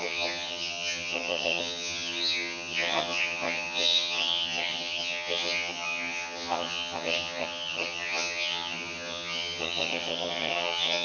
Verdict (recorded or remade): remade